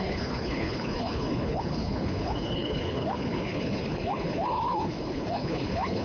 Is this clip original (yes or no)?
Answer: no